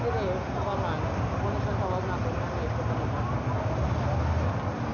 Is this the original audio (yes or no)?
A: yes